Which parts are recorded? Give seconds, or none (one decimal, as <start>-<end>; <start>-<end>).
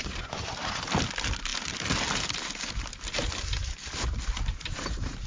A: 0.0-5.3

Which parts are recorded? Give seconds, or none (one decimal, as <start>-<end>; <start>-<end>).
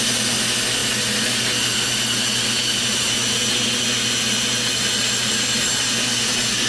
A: 0.0-6.7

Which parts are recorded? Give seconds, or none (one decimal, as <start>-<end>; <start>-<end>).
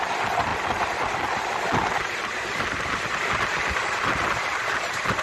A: 0.0-5.2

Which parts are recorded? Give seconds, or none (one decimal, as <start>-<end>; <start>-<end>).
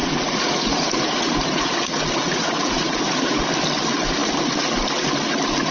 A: 3.4-5.7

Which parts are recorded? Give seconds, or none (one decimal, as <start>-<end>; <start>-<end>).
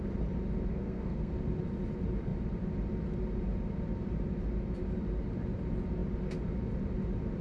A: 0.0-0.7; 1.3-7.4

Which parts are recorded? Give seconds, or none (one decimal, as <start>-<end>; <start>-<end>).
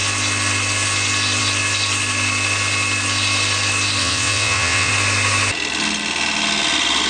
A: 0.0-4.0; 4.9-7.1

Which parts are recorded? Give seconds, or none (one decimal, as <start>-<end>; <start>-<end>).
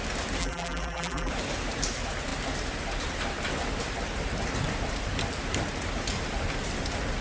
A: 0.0-0.4; 1.3-7.2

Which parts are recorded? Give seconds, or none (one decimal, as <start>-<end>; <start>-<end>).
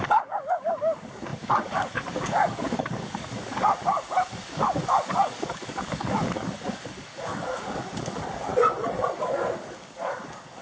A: 8.5-9.2